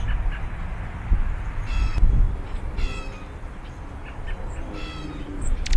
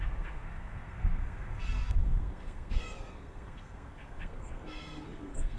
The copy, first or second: second